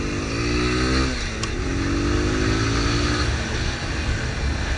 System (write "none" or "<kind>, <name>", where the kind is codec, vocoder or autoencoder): none